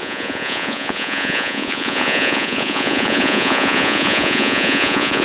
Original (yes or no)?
no